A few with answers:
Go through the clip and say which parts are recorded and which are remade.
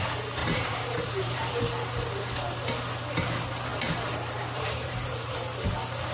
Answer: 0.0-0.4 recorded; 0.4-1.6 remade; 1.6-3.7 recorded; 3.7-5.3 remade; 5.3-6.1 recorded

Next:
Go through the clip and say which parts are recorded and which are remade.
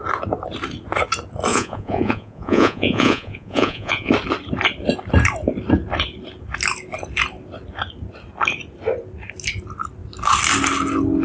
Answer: 0.0-1.5 recorded; 1.5-4.1 remade; 4.1-11.2 recorded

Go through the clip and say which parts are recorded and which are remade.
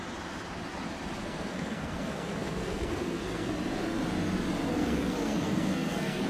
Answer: 0.0-1.2 recorded; 1.2-3.5 remade; 3.5-4.7 recorded; 4.7-6.3 remade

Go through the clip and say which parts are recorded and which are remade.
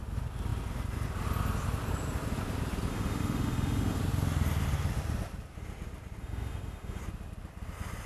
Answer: 0.0-2.9 recorded; 2.9-4.0 remade; 4.0-6.2 recorded; 6.2-7.0 remade; 7.0-8.1 recorded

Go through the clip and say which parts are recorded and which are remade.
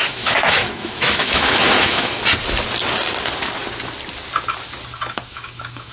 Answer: 0.0-2.2 remade; 2.2-5.3 recorded; 5.3-5.9 remade